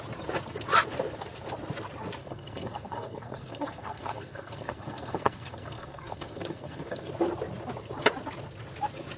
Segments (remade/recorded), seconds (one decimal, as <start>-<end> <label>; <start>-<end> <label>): 0.0-2.2 recorded; 2.2-7.1 remade; 7.1-9.2 recorded